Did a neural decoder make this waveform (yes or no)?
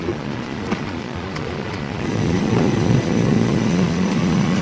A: yes